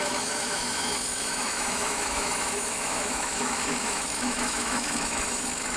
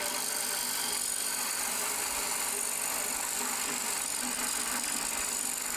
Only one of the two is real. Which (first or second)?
second